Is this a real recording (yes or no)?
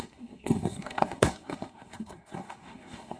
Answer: no